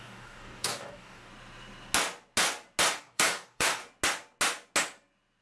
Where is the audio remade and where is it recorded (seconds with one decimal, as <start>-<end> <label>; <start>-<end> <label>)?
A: 0.0-1.3 remade; 1.3-3.0 recorded; 3.0-3.8 remade; 3.8-5.4 recorded